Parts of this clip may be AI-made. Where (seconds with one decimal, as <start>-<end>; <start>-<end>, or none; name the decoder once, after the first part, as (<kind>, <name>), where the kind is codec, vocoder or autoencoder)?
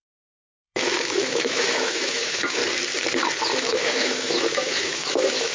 0.0-2.6 (autoencoder, DAC-VAE); 3.6-5.5